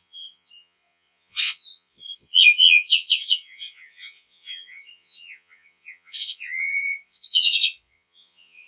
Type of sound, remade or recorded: remade